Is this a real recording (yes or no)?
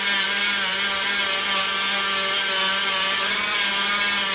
yes